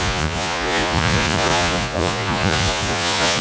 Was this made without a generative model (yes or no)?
no